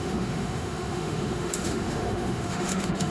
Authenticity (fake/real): fake